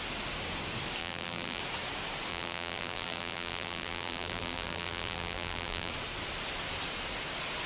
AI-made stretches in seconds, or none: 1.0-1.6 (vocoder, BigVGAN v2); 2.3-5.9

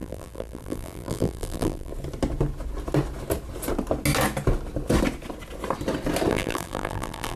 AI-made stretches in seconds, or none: 0.0-1.9 (vocoder, BigVGAN v2); 6.3-7.4